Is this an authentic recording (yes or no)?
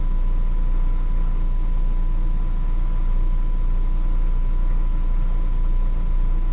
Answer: yes